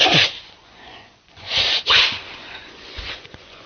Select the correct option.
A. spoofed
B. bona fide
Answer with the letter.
A